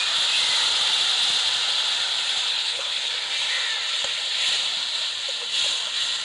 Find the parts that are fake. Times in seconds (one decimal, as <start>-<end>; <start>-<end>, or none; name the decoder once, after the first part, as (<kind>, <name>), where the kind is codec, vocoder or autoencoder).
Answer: 2.5-3.1 (codec, HILCodec)